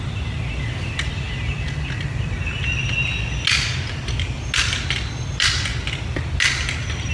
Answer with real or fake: real